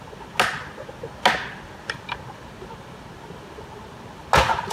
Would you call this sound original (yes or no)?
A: yes